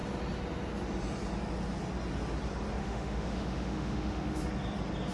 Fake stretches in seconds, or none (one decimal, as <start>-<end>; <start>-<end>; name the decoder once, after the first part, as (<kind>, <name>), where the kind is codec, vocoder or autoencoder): 2.8-4.4 (autoencoder, DAC-VAE)